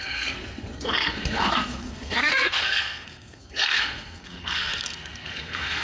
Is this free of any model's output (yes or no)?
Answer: no